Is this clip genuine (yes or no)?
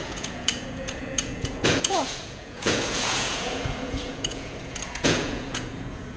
no